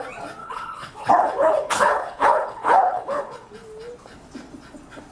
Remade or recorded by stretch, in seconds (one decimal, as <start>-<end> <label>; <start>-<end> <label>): 0.0-0.4 recorded; 0.4-3.5 remade; 3.5-5.1 recorded